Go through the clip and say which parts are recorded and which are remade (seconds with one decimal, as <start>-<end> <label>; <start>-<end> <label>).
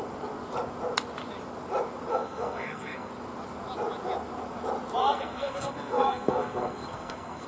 0.0-2.1 recorded; 2.1-3.1 remade; 3.1-5.0 recorded; 5.0-7.5 remade